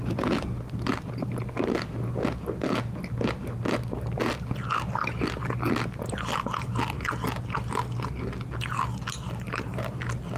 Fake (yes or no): no